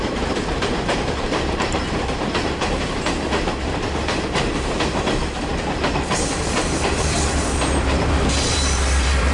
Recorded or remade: remade